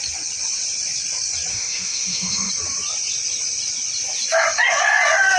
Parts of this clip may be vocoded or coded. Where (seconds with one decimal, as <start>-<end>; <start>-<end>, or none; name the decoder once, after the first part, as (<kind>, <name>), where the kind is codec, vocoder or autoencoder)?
1.5-2.5 (autoencoder, DAC-VAE)